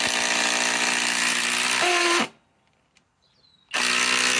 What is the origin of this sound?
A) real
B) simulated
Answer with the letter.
A